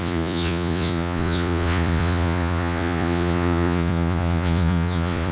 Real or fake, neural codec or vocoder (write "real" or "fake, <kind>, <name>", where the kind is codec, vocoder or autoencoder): fake, vocoder, Vocos